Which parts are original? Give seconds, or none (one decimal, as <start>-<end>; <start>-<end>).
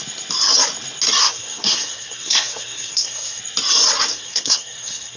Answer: 0.0-1.2; 3.4-4.1